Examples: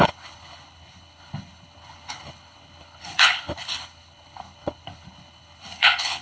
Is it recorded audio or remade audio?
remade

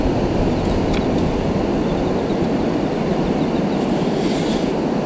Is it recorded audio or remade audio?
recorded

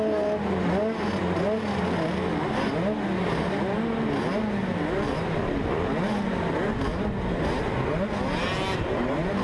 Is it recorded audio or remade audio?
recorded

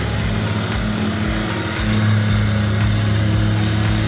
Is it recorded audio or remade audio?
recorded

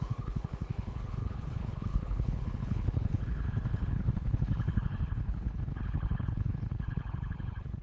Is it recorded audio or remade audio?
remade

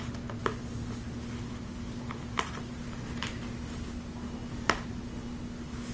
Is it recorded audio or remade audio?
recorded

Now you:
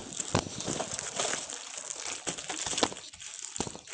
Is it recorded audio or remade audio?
recorded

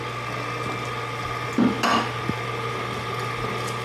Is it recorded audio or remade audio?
recorded